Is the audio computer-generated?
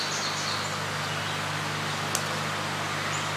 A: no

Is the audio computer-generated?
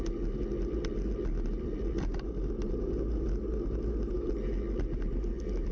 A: no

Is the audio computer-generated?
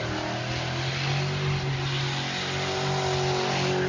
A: no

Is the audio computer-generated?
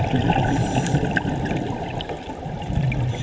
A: no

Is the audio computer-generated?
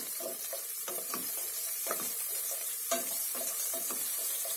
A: yes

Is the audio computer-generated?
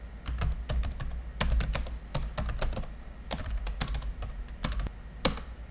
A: no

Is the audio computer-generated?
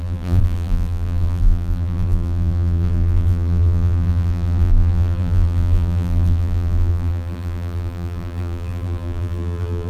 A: yes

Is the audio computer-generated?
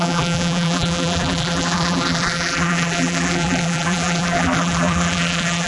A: yes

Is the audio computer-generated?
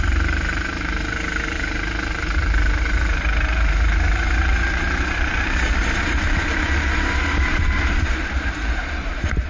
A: yes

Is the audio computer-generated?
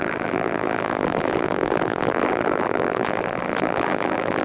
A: yes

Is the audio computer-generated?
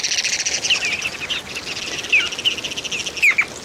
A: no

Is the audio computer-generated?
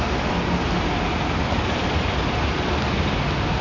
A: no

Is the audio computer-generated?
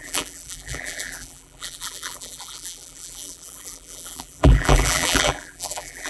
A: yes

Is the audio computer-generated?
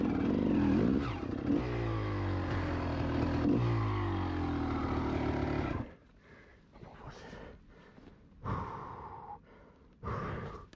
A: no